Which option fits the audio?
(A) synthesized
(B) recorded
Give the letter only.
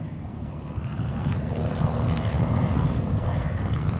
A